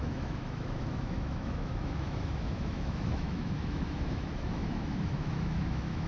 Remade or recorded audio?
remade